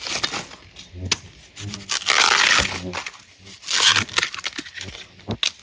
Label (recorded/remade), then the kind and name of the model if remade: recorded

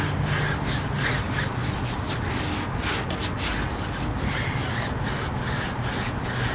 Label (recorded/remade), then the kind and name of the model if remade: recorded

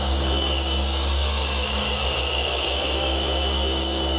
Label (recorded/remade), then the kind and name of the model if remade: remade, codec, DAC